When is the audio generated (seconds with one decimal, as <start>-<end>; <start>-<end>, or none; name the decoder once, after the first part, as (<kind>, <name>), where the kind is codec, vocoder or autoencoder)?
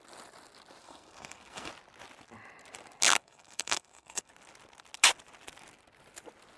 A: 0.8-1.7 (codec, SNAC); 3.2-4.3